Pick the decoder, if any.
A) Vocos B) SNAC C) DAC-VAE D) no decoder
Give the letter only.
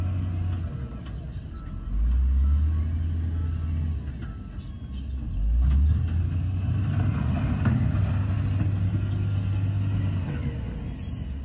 D